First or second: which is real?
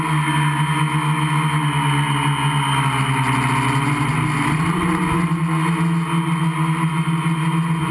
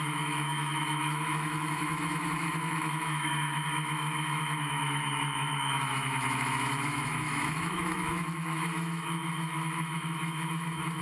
first